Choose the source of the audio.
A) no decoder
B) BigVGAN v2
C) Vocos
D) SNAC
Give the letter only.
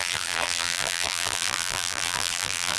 B